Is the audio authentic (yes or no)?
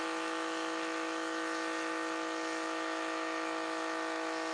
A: no